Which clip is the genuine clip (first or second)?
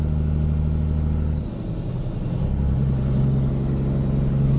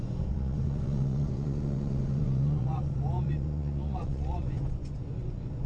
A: first